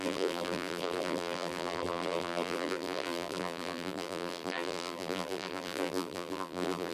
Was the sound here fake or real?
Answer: fake